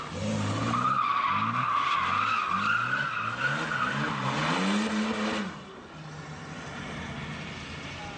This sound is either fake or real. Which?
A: real